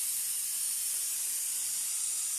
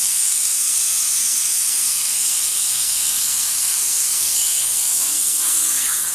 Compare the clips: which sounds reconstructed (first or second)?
second